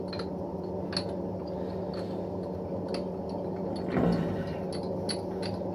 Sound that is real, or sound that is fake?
real